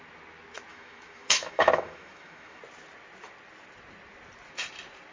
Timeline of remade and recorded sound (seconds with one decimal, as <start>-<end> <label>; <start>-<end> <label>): 0.0-0.7 recorded; 0.7-2.6 remade; 2.6-5.1 recorded